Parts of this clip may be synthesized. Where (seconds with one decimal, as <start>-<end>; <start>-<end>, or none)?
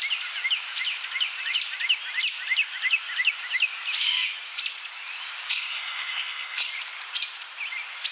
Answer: 5.5-6.7